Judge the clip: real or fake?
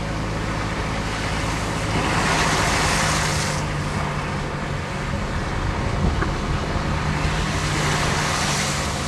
real